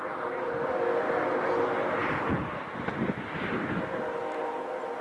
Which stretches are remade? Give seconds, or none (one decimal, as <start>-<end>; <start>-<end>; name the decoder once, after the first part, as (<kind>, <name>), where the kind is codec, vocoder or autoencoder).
none